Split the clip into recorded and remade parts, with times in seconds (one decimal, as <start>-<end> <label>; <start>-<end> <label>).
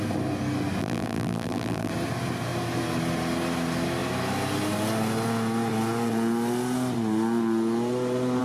0.0-0.8 recorded; 0.8-1.9 remade; 1.9-8.4 recorded